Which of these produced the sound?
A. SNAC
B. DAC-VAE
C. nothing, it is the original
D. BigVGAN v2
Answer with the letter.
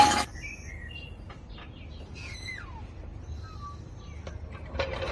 C